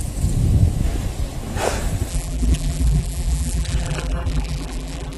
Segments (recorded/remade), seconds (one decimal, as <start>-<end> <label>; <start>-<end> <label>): 0.0-2.1 recorded; 2.1-5.2 remade